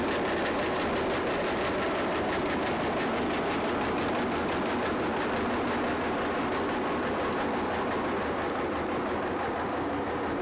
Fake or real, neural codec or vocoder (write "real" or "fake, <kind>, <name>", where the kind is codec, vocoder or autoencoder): real